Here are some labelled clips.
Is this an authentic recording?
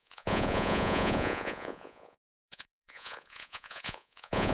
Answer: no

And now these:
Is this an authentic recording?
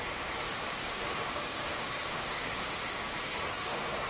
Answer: no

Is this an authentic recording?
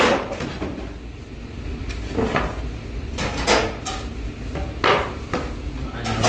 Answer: yes